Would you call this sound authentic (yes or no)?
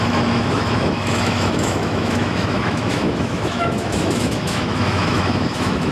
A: no